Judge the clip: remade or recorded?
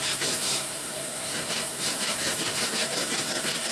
remade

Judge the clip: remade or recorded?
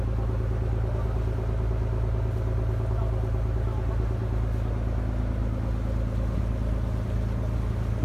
recorded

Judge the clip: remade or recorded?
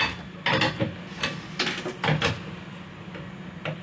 recorded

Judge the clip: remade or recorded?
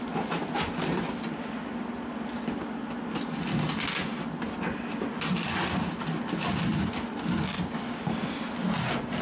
recorded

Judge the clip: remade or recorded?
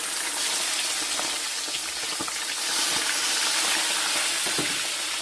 recorded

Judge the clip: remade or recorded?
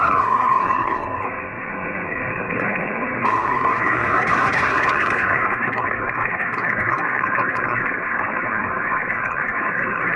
remade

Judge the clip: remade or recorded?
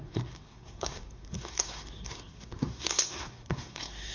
remade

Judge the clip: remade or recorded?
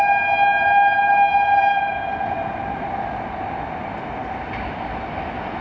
recorded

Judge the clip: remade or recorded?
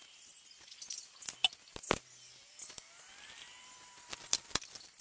recorded